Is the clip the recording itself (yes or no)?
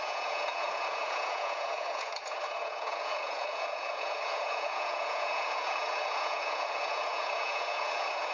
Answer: no